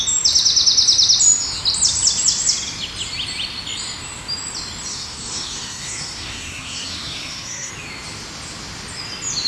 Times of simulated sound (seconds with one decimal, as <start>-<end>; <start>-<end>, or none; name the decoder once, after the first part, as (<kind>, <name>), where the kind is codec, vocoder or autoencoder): 4.9-7.7 (codec, SNAC)